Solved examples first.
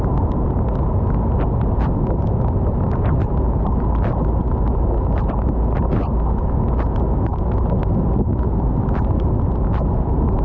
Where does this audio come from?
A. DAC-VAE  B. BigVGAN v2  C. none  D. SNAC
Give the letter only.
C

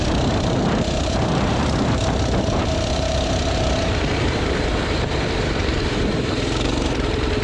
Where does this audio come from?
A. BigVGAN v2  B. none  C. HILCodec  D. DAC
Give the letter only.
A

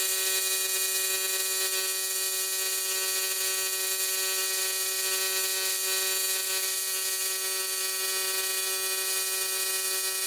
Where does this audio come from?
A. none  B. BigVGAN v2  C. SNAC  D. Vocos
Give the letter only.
A